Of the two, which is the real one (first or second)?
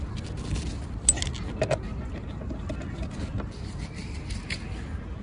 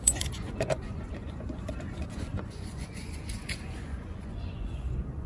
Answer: first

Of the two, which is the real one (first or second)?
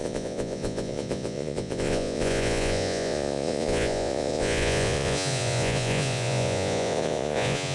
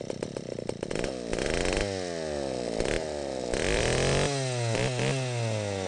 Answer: second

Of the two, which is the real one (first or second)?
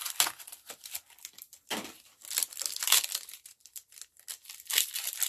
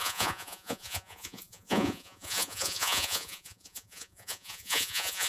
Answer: first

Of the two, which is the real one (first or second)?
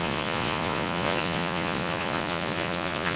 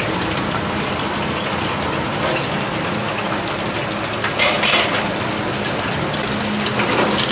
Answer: second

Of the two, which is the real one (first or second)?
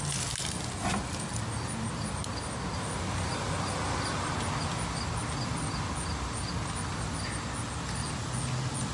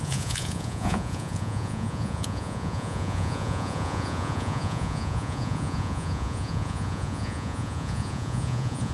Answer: first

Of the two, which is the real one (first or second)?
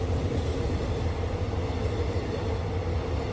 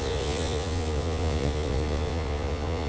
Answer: first